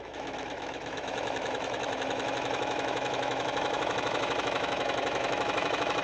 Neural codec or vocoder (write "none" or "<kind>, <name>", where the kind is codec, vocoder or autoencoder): autoencoder, DAC-VAE